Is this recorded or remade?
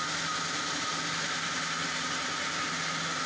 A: recorded